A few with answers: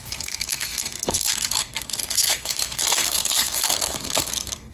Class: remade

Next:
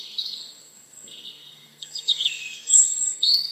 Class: remade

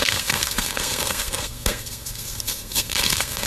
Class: remade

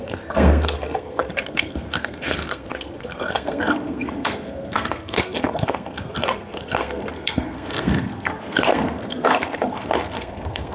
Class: remade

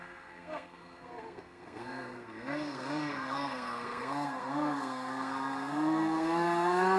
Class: remade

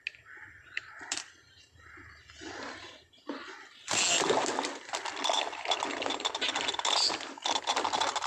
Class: recorded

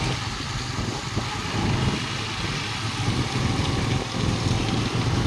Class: recorded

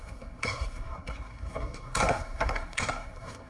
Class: remade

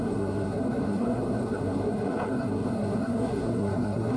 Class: remade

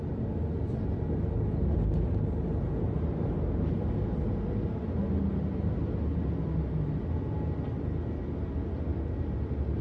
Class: recorded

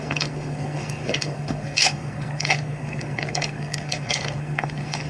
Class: remade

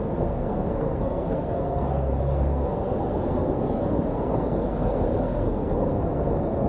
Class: remade